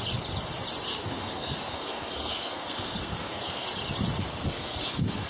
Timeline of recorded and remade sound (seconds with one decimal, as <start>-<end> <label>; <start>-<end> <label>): 0.0-0.9 recorded; 0.9-3.7 remade; 3.7-4.3 recorded; 4.3-5.3 remade